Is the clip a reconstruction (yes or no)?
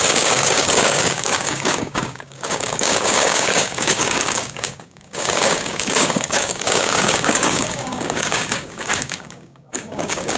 yes